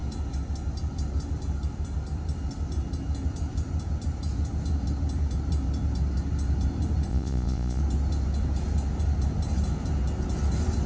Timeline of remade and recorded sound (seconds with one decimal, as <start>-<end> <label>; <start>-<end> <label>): 0.0-7.1 recorded; 7.1-7.8 remade; 7.8-10.9 recorded